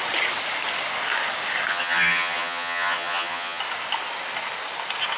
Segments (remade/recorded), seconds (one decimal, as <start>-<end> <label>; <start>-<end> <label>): 0.0-1.7 recorded; 1.7-3.6 remade; 3.6-5.2 recorded